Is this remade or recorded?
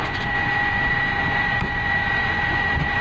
remade